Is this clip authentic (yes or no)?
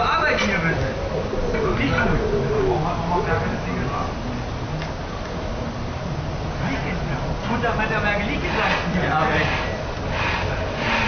yes